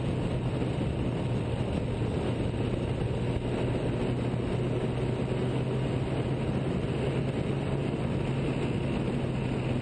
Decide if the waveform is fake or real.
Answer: real